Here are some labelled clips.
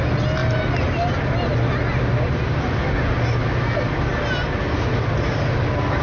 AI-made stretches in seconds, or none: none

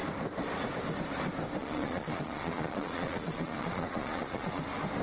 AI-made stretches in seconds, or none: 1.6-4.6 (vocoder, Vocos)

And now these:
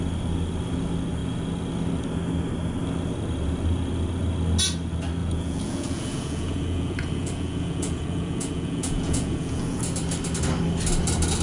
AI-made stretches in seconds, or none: 5.2-9.8 (vocoder, Vocos)

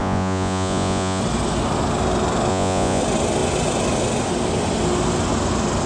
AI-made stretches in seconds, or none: 0.0-1.2 (vocoder, Vocos); 2.5-3.0

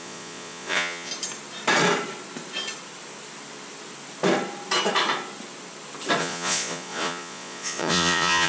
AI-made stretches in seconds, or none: 0.0-1.1 (vocoder, Vocos); 6.2-8.5